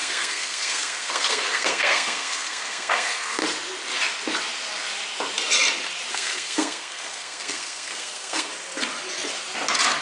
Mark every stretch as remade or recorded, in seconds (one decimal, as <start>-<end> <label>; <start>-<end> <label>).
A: 0.0-3.4 remade; 3.4-6.1 recorded; 6.1-8.5 remade; 8.5-10.0 recorded